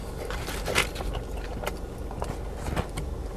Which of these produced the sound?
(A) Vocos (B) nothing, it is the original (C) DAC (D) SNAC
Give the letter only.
B